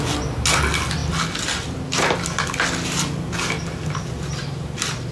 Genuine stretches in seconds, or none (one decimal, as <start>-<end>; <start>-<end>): 0.0-5.1